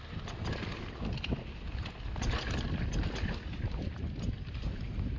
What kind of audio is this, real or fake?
real